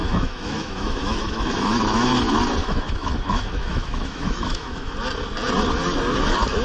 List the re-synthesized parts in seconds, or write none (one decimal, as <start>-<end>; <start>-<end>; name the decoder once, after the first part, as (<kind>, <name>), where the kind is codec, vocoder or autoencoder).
0.0-2.1 (autoencoder, DAC-VAE); 2.6-4.9